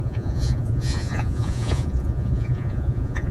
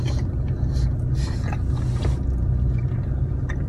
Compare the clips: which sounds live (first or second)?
second